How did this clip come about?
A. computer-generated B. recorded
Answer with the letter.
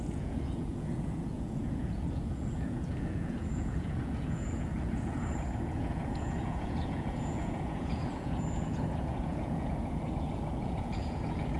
A